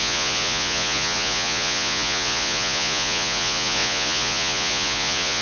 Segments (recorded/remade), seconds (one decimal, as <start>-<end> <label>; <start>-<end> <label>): 0.0-5.4 remade